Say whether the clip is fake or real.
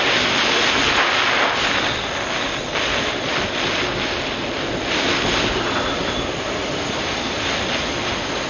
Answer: real